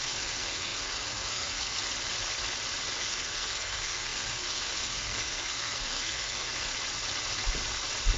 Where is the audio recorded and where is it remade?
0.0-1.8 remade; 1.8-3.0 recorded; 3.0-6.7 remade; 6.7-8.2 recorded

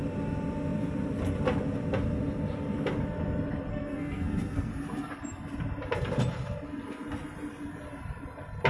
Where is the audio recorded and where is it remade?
0.0-3.7 recorded; 3.7-4.7 remade; 4.7-8.7 recorded

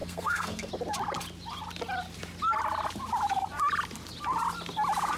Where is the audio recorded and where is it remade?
0.0-0.7 remade; 0.7-5.2 recorded

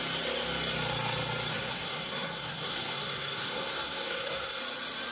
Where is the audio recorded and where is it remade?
0.0-1.5 recorded; 1.5-4.6 remade; 4.6-5.1 recorded

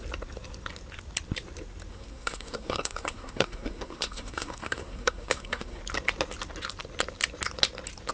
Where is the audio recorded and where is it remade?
0.0-1.9 recorded; 1.9-5.8 remade; 5.8-8.1 recorded